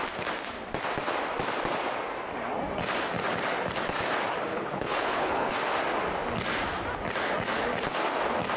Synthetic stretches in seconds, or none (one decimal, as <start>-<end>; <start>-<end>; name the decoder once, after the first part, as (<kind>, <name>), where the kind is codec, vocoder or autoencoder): 4.5-5.5 (codec, HILCodec)